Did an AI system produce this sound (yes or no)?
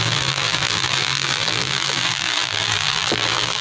yes